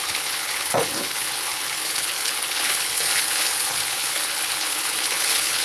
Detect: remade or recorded remade